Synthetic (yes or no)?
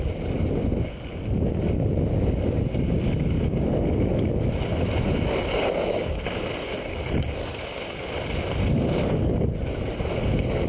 no